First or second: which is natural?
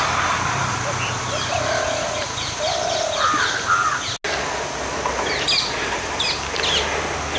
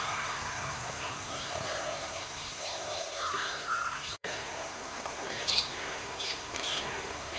first